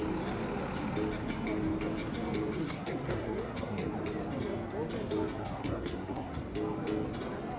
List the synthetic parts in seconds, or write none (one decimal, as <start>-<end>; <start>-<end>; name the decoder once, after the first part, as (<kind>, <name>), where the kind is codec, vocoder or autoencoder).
2.6-3.9 (codec, SNAC); 5.4-6.4